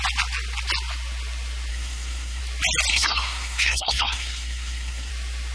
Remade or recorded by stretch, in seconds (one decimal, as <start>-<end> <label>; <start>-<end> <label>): 0.0-1.7 recorded; 1.7-2.4 remade; 2.4-2.9 recorded; 2.9-5.1 remade; 5.1-5.5 recorded